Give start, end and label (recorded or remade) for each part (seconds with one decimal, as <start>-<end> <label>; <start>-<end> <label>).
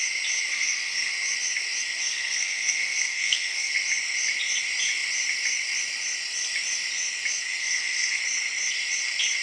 0.0-0.5 recorded; 0.5-1.1 remade; 1.1-2.0 recorded; 2.0-3.7 remade; 3.7-7.6 recorded; 7.6-8.2 remade; 8.2-9.4 recorded